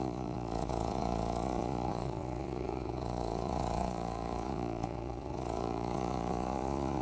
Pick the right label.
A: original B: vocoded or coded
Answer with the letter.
B